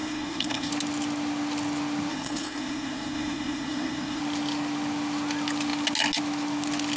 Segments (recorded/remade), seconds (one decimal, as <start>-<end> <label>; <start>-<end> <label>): 0.0-0.7 remade; 0.7-2.1 recorded; 2.1-4.2 remade; 4.2-7.0 recorded